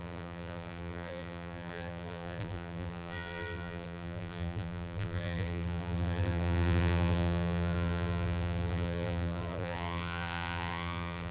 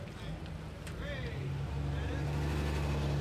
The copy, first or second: first